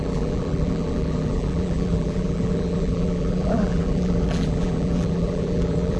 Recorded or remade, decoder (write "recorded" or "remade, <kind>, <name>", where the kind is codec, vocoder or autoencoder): remade, vocoder, BigVGAN v2